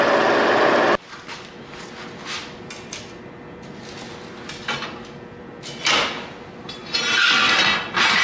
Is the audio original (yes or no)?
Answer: yes